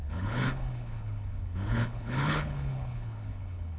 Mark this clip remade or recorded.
remade